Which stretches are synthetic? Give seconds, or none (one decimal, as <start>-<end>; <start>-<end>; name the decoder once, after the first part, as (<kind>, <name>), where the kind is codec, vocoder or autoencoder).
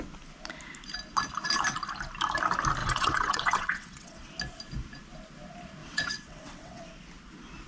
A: 2.8-4.3 (vocoder, WaveNeXt); 5.8-6.8